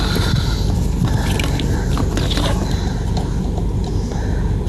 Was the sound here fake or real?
real